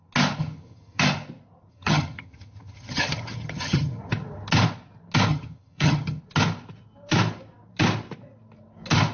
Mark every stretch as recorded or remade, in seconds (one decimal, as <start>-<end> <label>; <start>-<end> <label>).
0.0-0.4 recorded; 0.4-1.0 remade; 1.0-1.7 recorded; 1.7-4.0 remade; 4.0-5.3 recorded; 5.3-6.2 remade; 6.2-9.1 recorded